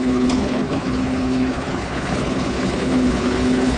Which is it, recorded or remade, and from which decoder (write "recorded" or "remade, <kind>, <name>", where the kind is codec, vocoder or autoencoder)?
remade, codec, HILCodec